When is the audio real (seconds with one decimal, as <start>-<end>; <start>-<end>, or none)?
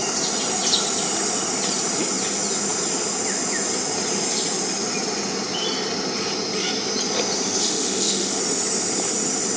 0.0-7.6; 8.4-9.6